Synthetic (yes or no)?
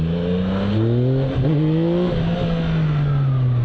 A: no